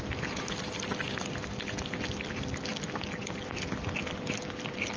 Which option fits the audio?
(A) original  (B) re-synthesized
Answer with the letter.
A